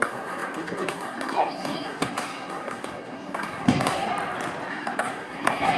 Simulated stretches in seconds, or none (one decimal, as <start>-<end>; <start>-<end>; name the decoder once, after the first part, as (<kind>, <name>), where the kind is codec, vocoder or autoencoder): 0.0-4.1 (codec, SNAC); 4.7-5.8